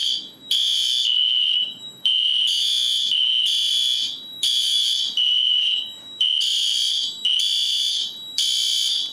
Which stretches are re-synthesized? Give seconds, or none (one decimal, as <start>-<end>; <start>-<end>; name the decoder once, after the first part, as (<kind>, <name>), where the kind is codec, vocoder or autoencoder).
0.0-2.3 (vocoder, BigVGAN v2); 3.7-9.1